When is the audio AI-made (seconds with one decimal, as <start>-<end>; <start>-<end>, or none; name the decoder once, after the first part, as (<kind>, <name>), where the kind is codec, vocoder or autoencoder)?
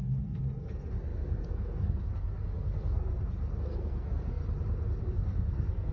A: 0.0-3.1 (codec, SNAC); 3.6-4.4; 5.0-5.9